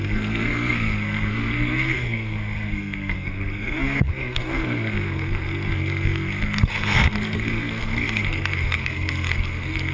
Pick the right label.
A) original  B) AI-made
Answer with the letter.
B